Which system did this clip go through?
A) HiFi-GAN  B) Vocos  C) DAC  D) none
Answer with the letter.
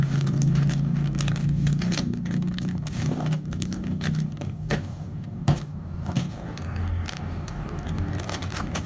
C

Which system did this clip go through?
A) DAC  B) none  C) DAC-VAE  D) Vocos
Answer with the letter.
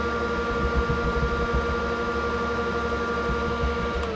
B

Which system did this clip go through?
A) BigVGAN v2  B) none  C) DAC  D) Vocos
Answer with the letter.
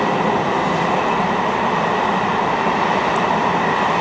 B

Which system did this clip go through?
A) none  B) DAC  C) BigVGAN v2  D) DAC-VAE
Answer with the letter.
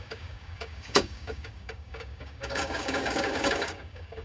B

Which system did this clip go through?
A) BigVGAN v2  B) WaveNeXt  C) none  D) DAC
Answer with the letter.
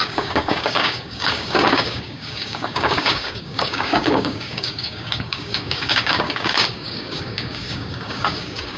D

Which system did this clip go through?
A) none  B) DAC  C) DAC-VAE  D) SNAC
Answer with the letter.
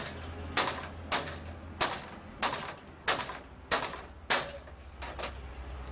A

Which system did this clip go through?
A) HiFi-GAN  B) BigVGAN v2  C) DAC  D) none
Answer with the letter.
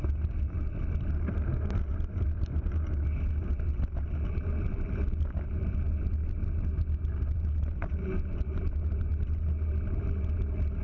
D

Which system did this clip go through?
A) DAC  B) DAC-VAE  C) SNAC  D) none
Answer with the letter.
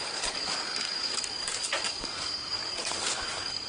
A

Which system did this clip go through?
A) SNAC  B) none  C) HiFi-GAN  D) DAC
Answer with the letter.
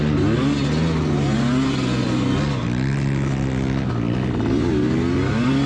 B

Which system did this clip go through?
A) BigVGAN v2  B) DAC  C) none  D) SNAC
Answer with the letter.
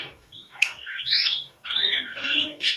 B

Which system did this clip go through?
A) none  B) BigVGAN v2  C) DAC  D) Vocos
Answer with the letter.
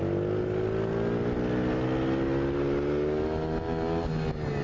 A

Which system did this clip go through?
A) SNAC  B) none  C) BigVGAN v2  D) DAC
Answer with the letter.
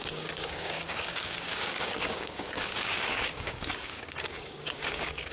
D